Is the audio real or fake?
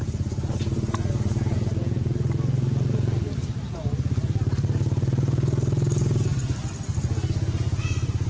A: real